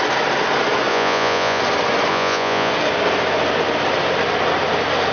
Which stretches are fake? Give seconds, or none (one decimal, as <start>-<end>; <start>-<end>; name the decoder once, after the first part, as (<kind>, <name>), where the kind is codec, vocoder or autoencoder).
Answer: 0.9-1.6 (vocoder, Vocos); 2.1-2.7